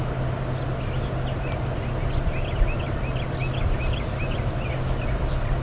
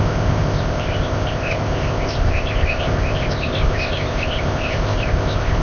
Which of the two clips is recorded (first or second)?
first